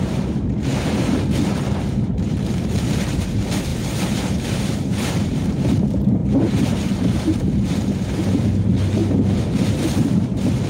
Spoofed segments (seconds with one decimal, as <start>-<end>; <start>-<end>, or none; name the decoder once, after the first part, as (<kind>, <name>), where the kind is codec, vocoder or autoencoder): 0.0-9.0 (vocoder, BigVGAN v2); 9.6-10.7